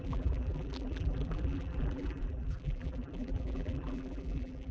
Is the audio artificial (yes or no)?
yes